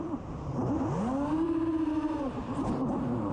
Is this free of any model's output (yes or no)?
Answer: no